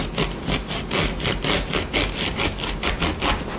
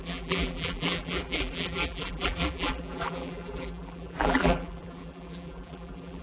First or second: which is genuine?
first